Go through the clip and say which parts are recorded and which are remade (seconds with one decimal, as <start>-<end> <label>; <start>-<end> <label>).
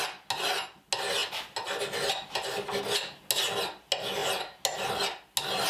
0.0-5.7 recorded